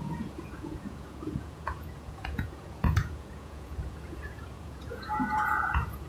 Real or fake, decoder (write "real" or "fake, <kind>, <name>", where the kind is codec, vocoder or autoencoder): fake, vocoder, Vocos